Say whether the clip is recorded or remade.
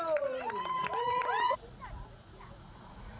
remade